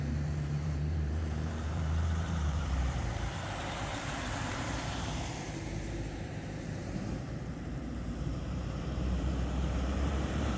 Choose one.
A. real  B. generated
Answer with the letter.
B